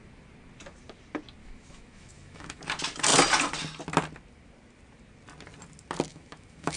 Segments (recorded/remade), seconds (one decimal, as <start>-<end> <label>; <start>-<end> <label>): 0.0-1.4 recorded; 1.4-2.6 remade; 2.6-6.1 recorded; 6.1-6.8 remade